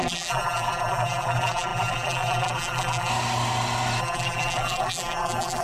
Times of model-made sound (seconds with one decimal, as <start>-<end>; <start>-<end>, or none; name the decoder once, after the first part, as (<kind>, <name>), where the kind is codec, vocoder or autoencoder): 0.0-3.1 (vocoder, BigVGAN v2); 4.0-5.6